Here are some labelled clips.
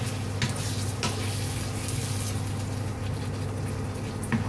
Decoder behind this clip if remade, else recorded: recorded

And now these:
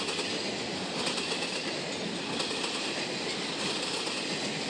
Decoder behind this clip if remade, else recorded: recorded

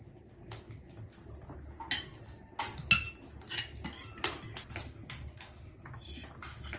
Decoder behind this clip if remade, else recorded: recorded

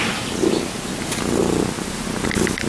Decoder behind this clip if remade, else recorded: recorded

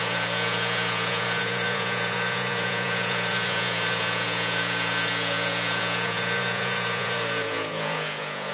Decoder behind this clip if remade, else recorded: remade, vocoder, Vocos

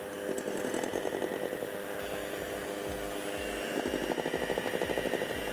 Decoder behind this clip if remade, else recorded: recorded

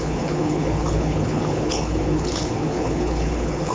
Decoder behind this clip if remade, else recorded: remade, codec, HILCodec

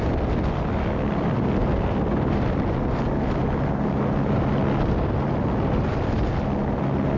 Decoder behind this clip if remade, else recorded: recorded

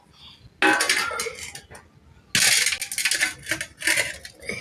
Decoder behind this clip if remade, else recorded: recorded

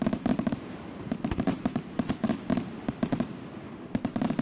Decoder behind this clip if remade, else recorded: remade, vocoder, BigVGAN v2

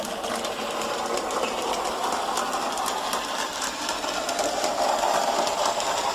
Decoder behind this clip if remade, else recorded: recorded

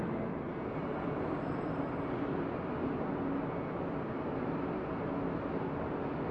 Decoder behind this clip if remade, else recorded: recorded